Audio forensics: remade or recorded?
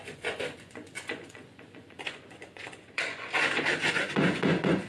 remade